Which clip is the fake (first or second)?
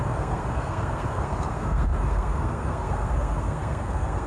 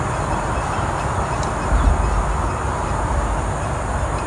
first